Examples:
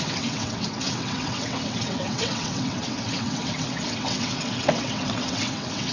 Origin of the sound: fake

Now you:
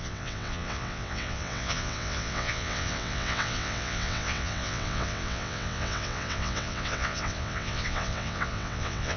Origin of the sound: fake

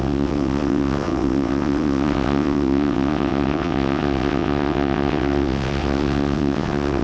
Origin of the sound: fake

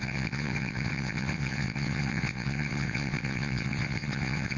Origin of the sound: fake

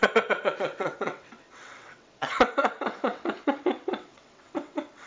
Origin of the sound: fake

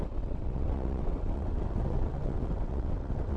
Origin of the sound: fake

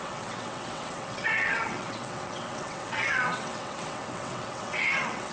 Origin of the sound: fake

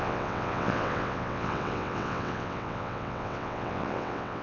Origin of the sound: fake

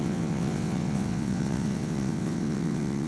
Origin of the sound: fake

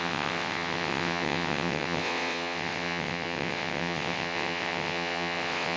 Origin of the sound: fake